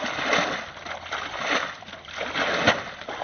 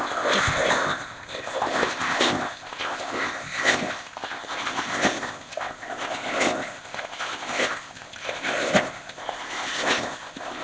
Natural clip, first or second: first